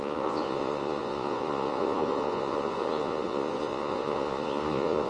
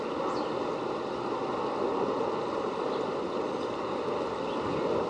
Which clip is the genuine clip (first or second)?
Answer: second